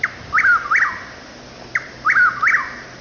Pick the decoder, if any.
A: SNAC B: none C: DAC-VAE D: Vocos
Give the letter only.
B